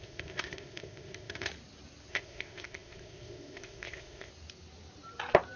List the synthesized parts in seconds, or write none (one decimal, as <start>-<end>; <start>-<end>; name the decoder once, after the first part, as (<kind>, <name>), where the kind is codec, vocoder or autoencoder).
0.0-1.5 (codec, ZipCodec); 2.1-4.3